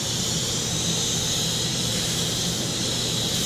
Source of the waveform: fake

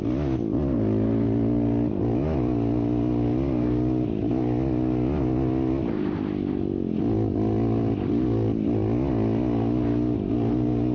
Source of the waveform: real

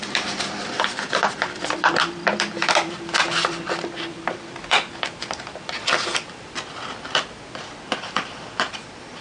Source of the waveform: fake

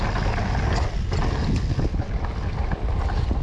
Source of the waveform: real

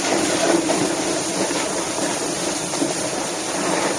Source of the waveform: real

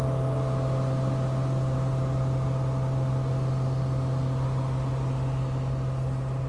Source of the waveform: real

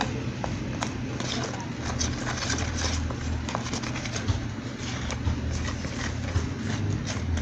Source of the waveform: real